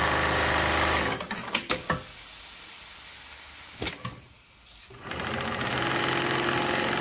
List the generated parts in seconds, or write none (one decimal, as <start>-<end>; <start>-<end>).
none